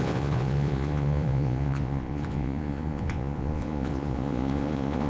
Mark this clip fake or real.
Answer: fake